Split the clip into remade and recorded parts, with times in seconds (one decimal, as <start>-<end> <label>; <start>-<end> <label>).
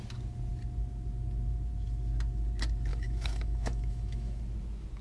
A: 0.0-2.9 recorded; 2.9-4.4 remade; 4.4-5.0 recorded